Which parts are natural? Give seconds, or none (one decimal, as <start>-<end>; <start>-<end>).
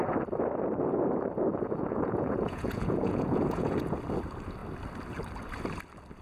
0.0-1.5; 4.0-6.2